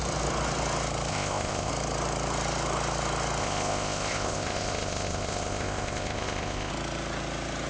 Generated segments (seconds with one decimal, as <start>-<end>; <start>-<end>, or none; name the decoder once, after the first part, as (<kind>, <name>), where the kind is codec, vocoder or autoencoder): 1.1-1.7 (codec, ZipCodec); 3.4-6.7